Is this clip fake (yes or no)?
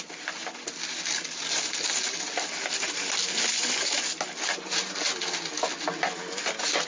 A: no